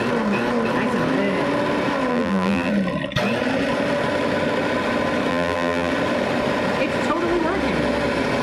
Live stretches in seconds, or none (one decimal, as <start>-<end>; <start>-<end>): 0.0-2.1; 2.7-5.3; 5.9-8.4